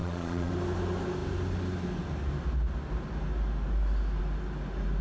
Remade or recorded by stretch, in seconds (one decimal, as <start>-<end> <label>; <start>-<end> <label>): 0.0-0.5 remade; 0.5-5.0 recorded